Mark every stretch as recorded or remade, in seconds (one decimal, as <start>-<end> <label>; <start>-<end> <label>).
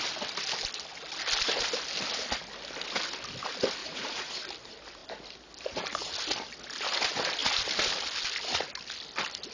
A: 0.0-3.8 recorded; 3.8-4.3 remade; 4.3-9.5 recorded